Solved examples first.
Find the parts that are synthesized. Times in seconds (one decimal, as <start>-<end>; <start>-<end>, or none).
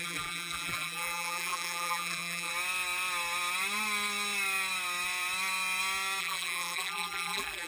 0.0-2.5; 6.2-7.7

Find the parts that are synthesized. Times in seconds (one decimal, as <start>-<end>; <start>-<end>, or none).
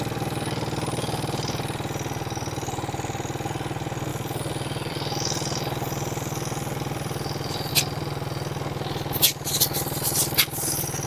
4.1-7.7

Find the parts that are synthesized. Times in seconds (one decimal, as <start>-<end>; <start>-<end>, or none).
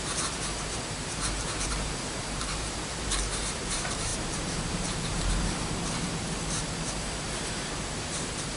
0.0-8.6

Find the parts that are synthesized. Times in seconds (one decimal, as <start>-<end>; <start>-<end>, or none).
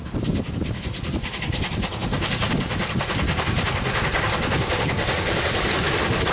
0.0-6.3